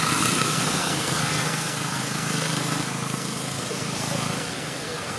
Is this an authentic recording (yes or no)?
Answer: no